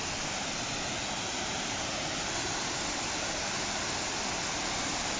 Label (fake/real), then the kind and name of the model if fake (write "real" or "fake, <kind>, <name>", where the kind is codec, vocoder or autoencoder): real